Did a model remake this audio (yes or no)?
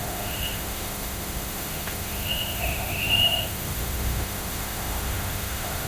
yes